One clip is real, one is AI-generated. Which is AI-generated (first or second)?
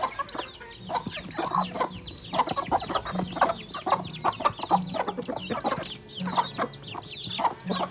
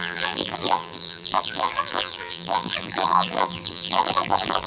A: second